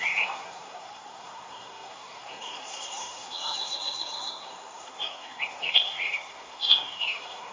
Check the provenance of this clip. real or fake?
fake